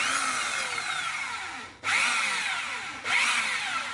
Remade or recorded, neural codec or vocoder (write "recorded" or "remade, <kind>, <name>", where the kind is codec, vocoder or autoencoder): recorded